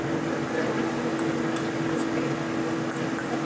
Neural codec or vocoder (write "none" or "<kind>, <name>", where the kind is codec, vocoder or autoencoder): none